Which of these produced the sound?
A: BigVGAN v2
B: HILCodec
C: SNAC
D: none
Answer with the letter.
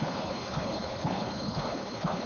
B